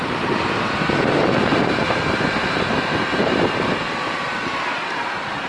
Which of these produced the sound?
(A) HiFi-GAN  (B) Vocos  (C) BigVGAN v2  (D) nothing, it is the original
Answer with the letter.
C